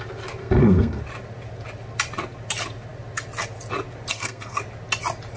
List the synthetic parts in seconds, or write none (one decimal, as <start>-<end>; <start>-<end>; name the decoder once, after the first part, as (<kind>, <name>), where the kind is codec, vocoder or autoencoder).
0.4-1.0 (codec, SNAC); 4.1-4.6